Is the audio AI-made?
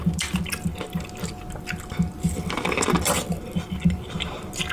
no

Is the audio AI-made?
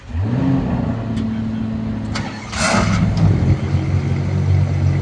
no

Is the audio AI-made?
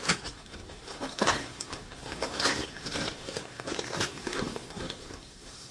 yes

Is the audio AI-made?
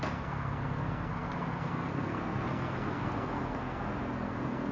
yes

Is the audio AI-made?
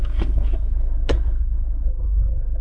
yes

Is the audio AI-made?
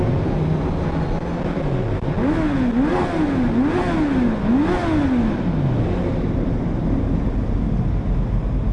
no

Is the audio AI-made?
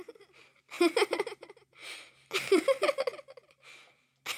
no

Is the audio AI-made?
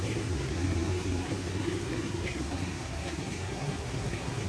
yes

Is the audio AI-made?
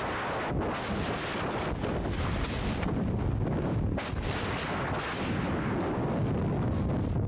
no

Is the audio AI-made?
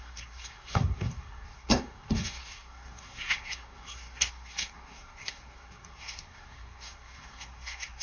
yes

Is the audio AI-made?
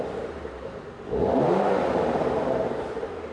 no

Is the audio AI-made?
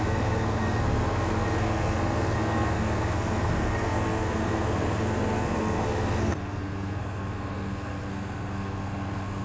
yes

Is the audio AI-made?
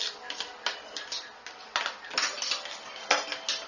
no